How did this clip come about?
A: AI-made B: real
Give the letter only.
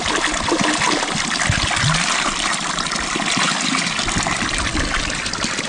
B